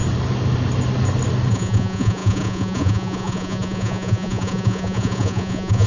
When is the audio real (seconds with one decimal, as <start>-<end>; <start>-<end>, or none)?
0.0-1.5